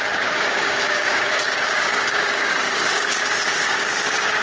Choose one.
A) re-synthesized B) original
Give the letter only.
A